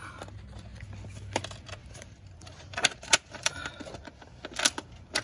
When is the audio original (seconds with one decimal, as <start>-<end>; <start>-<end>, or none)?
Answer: 0.0-1.8; 3.7-5.2